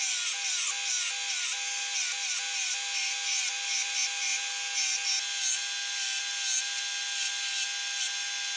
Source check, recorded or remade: recorded